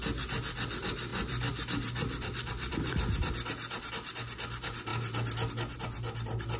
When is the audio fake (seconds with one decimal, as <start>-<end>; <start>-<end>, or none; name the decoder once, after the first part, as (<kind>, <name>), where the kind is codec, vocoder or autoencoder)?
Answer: 1.1-3.9 (vocoder, BigVGAN v2)